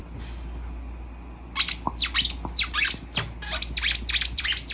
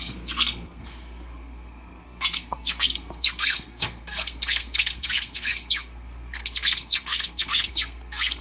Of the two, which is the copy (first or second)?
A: second